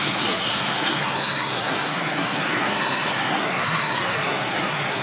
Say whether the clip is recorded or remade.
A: remade